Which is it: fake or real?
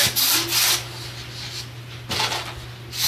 real